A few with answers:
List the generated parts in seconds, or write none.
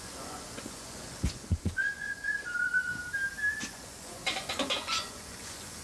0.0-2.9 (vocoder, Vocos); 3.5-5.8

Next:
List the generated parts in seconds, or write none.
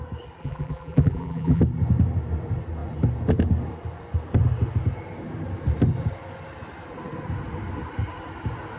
0.4-1.6 (vocoder, BigVGAN v2)